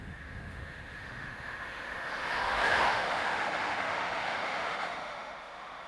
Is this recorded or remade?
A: remade